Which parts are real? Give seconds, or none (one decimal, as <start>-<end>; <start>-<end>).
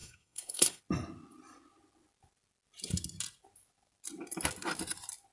0.8-5.3